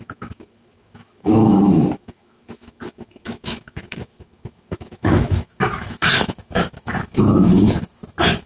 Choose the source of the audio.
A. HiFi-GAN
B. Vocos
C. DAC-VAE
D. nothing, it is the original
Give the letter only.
C